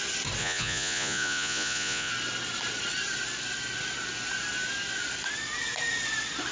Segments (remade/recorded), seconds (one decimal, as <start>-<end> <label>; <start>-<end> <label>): 0.0-0.4 recorded; 0.4-2.1 remade; 2.1-6.5 recorded